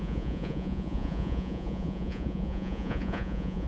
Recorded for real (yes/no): no